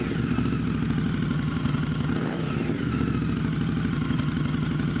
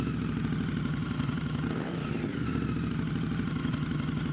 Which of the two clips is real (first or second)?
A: first